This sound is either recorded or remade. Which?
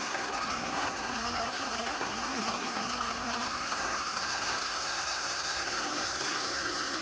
remade